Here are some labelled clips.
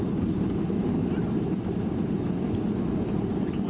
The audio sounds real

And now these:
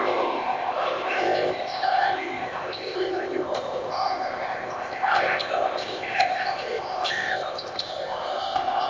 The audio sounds fake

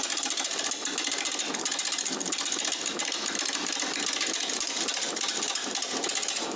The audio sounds real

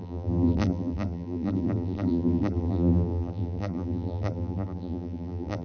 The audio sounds fake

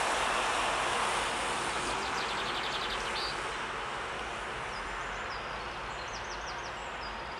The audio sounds real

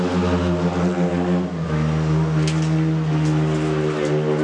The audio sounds real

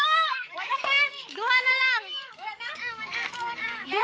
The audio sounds fake